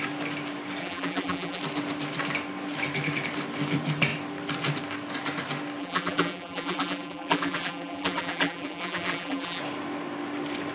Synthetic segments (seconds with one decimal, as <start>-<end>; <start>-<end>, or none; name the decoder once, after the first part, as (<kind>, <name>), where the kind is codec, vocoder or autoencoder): 0.8-1.6 (vocoder, BigVGAN v2); 5.8-9.6